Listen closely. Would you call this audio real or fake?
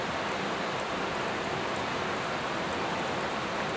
real